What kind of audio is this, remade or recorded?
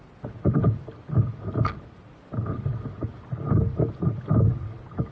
recorded